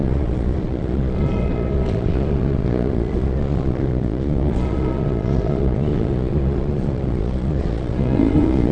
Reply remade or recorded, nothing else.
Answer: remade